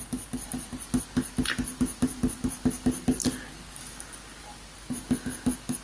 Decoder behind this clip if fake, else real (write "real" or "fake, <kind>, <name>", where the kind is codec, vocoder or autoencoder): real